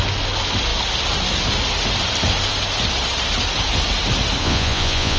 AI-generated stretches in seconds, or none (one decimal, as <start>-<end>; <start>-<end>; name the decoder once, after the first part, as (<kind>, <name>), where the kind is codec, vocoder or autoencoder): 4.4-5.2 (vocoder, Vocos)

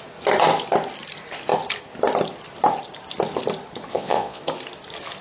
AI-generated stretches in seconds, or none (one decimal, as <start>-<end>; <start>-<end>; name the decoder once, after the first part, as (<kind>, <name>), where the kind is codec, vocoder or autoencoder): 3.9-4.4 (vocoder, Vocos)

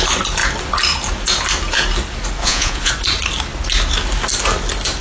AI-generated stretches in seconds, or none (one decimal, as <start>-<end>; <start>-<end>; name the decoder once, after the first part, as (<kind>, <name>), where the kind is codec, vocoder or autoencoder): 2.4-2.9 (vocoder, Vocos)